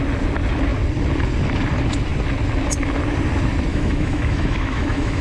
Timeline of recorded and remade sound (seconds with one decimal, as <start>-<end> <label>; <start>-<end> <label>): 0.0-3.7 recorded; 3.7-5.2 remade